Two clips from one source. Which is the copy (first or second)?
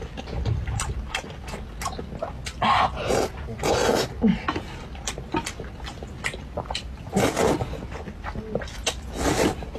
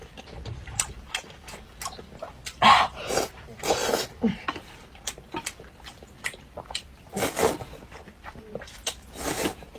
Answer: second